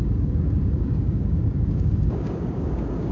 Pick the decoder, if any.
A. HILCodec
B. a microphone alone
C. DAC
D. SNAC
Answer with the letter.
C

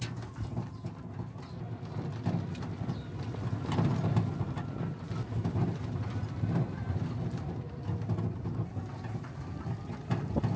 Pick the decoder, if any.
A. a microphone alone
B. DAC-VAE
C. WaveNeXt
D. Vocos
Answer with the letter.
A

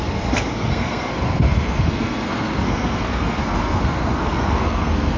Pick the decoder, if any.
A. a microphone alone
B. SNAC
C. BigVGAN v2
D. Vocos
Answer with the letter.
B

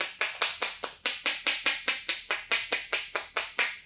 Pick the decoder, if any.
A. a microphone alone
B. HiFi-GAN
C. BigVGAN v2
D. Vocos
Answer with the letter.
A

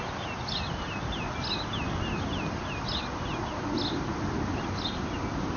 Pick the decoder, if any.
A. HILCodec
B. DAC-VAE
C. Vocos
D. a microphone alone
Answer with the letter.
D